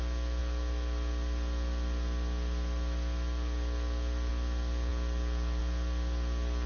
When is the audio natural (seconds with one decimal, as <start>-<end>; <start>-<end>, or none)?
0.0-6.7